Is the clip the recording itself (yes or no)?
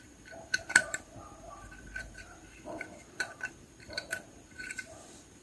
no